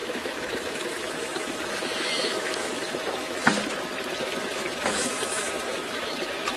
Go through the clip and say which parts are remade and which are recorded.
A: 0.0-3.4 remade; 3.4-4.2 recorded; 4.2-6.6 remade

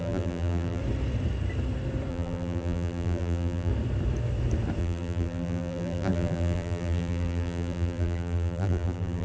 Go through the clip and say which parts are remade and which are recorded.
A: 0.0-0.8 remade; 0.8-2.1 recorded; 2.1-3.7 remade; 3.7-4.8 recorded; 4.8-9.2 remade

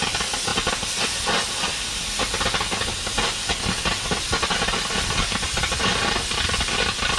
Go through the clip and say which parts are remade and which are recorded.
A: 0.0-7.2 recorded

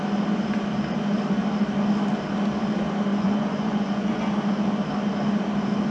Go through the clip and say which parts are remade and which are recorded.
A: 0.0-3.1 recorded; 3.1-4.3 remade; 4.3-5.9 recorded